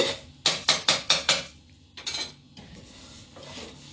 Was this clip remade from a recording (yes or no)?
no